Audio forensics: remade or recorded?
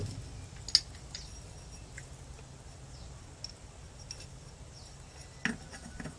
recorded